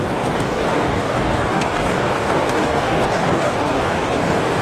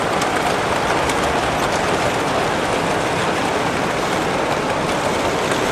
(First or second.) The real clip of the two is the second